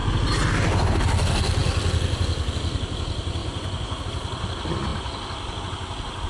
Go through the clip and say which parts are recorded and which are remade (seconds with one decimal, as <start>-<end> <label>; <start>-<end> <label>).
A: 0.0-3.4 recorded; 3.4-4.0 remade; 4.0-6.3 recorded